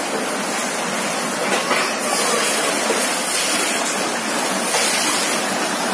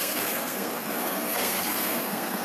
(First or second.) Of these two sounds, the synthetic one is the second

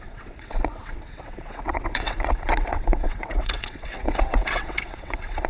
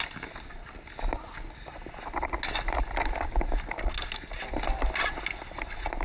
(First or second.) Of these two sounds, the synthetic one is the first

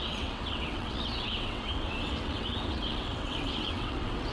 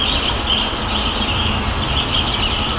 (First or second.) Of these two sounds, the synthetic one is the first